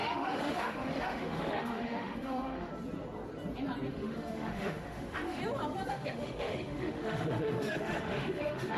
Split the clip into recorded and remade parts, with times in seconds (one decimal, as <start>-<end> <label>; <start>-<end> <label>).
0.0-2.7 remade; 2.7-3.9 recorded; 3.9-5.4 remade; 5.4-5.9 recorded; 5.9-8.8 remade